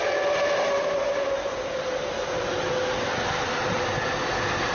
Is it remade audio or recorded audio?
recorded